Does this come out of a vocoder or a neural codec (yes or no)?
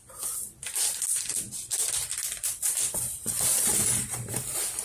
yes